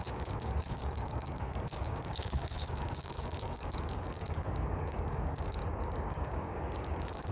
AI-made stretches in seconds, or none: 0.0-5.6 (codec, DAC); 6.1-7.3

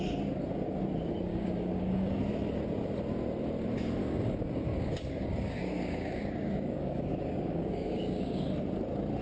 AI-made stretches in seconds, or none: 1.3-2.2 (codec, DAC); 4.0-8.4

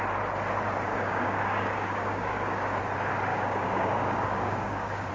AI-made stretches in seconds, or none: 0.9-2.8 (codec, DAC); 3.3-5.1

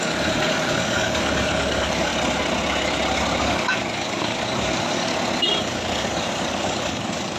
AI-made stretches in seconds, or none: 0.0-2.1 (codec, DAC); 3.4-5.1; 5.6-7.4

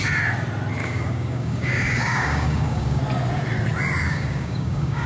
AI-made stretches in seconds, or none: 0.8-3.0 (codec, DAC); 4.0-5.1